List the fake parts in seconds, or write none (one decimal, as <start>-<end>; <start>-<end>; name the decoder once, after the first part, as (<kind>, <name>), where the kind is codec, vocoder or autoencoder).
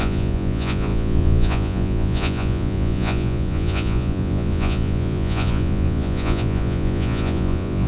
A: 0.0-7.9 (vocoder, Vocos)